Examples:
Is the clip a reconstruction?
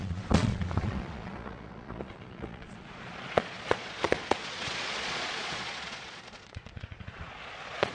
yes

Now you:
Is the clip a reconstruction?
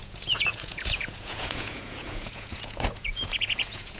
yes